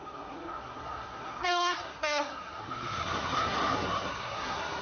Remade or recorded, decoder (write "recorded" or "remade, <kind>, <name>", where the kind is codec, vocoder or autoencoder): remade, codec, SNAC